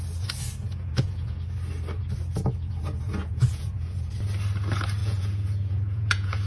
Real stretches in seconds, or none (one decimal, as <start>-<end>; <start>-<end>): 0.0-0.6; 1.4-3.2; 4.1-5.0